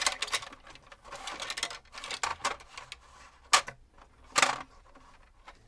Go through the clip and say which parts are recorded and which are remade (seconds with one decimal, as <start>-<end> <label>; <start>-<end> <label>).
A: 0.0-5.7 recorded